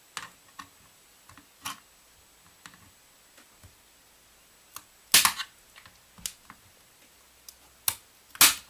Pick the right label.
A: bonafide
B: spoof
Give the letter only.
A